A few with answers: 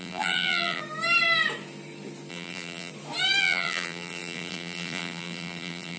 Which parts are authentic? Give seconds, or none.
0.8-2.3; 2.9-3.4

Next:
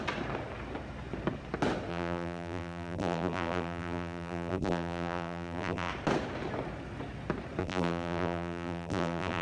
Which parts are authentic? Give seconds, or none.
0.0-1.9; 5.9-7.6